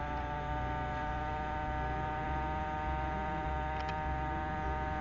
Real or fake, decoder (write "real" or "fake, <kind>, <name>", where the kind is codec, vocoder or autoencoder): real